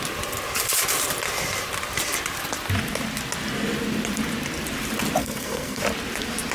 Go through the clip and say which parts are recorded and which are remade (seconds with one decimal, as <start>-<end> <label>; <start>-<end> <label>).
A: 0.0-5.2 recorded; 5.2-5.8 remade; 5.8-6.5 recorded